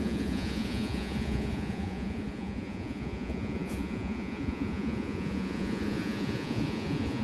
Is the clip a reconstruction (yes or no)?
yes